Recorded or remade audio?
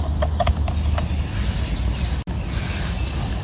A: recorded